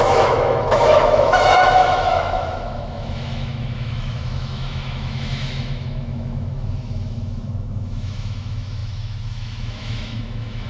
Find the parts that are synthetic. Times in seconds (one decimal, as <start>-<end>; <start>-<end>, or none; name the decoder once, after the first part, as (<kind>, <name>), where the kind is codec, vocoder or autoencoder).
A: 0.0-10.7 (autoencoder, DAC-VAE)